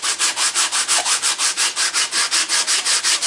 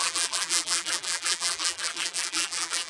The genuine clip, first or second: first